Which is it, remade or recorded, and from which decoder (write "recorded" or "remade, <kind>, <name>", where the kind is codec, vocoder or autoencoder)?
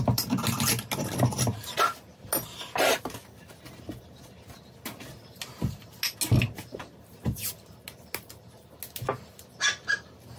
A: recorded